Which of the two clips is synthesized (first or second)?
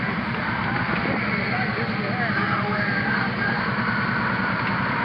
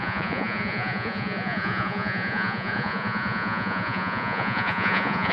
second